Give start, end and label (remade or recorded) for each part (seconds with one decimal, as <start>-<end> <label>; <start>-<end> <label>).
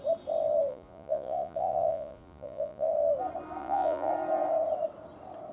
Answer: 0.0-0.7 recorded; 0.7-2.9 remade; 2.9-3.6 recorded; 3.6-4.1 remade; 4.1-5.5 recorded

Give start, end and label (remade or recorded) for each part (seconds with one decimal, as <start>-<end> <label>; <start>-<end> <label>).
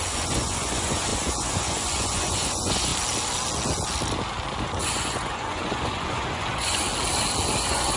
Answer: 0.0-2.9 remade; 2.9-4.8 recorded; 4.8-6.9 remade; 6.9-7.6 recorded; 7.6-8.0 remade